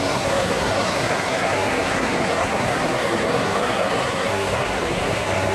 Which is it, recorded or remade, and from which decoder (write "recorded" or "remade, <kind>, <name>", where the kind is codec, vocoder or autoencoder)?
remade, codec, SNAC